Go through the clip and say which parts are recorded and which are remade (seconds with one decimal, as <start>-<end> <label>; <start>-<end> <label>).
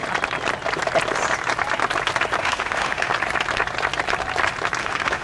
0.0-2.4 recorded; 2.4-3.1 remade; 3.1-4.8 recorded; 4.8-5.2 remade